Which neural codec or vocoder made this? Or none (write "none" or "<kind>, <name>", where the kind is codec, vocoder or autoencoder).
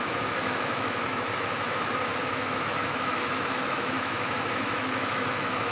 autoencoder, DAC-VAE